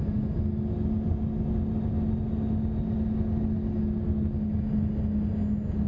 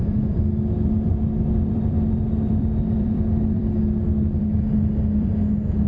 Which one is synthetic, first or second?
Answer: second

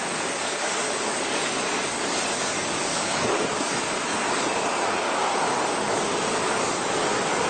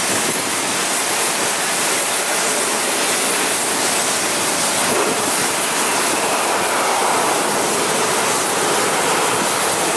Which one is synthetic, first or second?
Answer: first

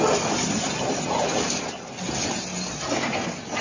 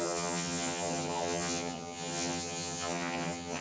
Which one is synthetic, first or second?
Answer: second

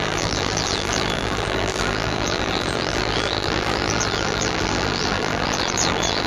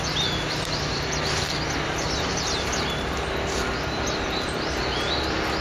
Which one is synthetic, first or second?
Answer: first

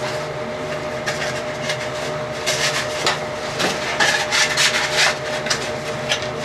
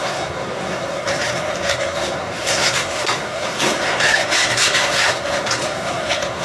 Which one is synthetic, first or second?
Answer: second